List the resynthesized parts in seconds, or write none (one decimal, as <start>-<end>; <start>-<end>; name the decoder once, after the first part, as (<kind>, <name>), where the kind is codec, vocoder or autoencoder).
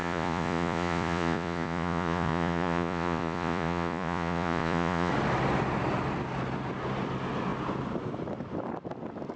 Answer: 0.0-5.1 (vocoder, Vocos)